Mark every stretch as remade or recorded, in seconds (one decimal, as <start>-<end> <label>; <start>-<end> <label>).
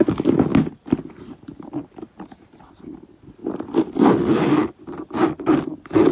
0.0-6.1 recorded